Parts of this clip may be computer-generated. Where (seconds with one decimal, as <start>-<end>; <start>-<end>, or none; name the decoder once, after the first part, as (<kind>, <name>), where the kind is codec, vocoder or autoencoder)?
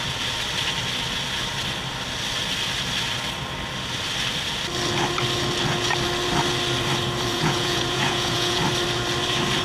7.3-8.6 (vocoder, Vocos)